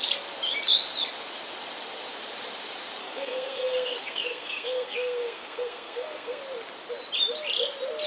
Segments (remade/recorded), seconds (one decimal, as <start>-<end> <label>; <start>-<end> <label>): 0.0-3.0 recorded; 3.0-6.4 remade; 6.4-8.1 recorded